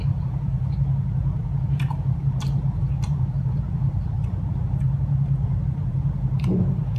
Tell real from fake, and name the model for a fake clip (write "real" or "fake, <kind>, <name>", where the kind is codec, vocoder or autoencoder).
fake, vocoder, BigVGAN v2